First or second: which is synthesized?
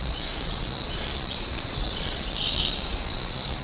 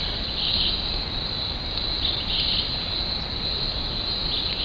first